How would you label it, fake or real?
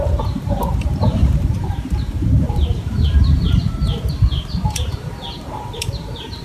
fake